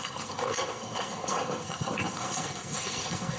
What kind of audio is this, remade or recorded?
remade